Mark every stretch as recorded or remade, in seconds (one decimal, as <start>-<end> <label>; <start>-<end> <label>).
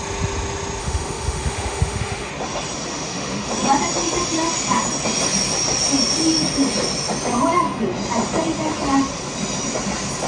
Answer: 0.0-0.8 recorded; 0.8-2.3 remade; 2.3-2.9 recorded; 2.9-3.5 remade; 3.5-10.3 recorded